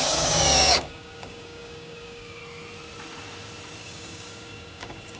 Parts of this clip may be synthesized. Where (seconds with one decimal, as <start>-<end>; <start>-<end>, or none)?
0.0-2.4; 3.8-5.2